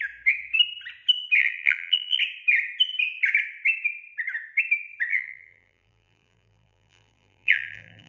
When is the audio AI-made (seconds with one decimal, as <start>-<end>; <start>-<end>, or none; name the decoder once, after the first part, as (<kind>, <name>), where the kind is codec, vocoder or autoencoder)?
1.4-2.2 (vocoder, BigVGAN v2); 5.1-8.1

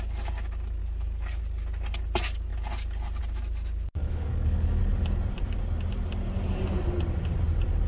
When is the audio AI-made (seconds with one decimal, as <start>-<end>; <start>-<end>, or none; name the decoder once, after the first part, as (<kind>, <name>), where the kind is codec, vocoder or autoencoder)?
0.8-1.4 (codec, DAC); 4.0-4.8

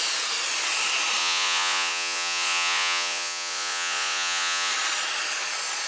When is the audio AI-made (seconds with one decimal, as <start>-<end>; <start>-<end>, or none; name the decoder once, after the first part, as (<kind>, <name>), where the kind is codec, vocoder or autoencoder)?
1.2-4.7 (vocoder, Vocos)

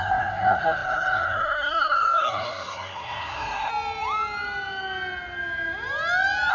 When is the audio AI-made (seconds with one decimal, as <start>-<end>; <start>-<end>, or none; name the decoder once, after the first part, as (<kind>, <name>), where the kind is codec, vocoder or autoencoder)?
0.0-3.7 (codec, SNAC)

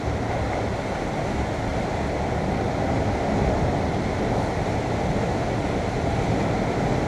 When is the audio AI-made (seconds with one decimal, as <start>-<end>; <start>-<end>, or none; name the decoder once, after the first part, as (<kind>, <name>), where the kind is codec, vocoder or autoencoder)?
none

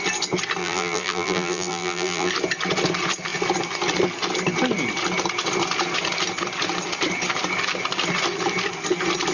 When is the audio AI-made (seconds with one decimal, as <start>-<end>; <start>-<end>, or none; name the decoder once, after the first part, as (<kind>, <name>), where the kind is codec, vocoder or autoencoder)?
0.6-2.3 (vocoder, BigVGAN v2)

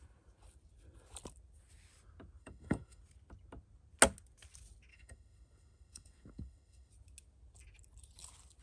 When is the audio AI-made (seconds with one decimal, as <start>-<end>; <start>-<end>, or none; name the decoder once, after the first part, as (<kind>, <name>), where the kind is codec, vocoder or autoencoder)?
2.4-3.0 (autoencoder, DAC-VAE); 4.9-6.9

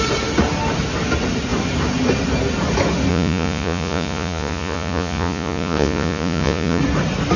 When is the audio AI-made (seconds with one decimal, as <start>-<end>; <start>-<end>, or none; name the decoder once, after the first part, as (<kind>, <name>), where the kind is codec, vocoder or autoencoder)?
3.1-6.8 (vocoder, Vocos)